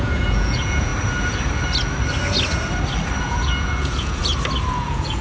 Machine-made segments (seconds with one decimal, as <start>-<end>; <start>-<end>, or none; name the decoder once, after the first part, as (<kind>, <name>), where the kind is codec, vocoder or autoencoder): 0.0-0.9 (vocoder, Vocos); 3.2-4.3; 4.8-5.2